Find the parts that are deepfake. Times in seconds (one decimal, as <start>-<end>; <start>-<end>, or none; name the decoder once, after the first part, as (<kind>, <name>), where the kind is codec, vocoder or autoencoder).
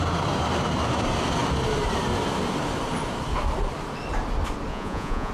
4.7-5.3 (vocoder, Vocos)